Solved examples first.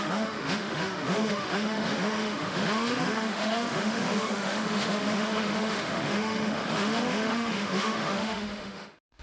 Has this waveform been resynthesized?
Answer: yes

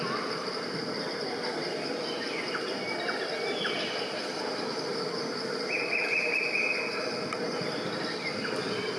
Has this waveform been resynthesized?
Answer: no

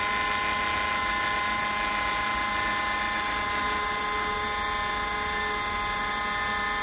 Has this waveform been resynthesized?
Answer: no